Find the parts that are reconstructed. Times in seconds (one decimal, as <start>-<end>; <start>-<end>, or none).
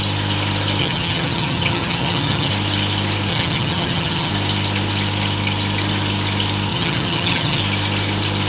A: 0.8-2.5; 3.3-4.3; 6.7-7.6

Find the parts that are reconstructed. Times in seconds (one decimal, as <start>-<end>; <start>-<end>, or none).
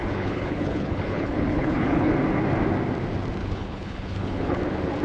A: 0.0-2.1; 3.4-4.6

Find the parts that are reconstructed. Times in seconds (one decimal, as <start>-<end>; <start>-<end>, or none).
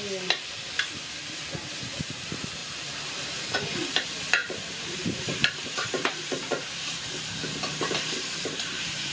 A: 2.6-3.7; 4.4-9.1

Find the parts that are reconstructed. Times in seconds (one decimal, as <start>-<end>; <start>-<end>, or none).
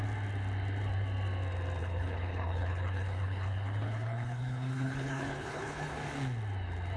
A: 1.8-6.0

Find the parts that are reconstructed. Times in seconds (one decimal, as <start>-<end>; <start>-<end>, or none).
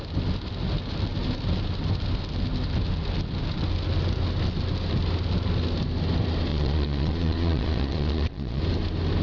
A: 6.5-8.6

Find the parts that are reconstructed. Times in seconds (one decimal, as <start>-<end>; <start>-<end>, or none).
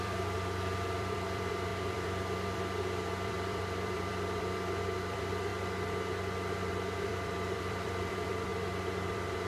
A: 0.0-5.5; 6.7-8.5; 9.1-9.5